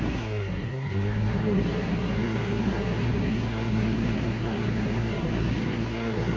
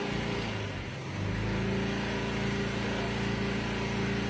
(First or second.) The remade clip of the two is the first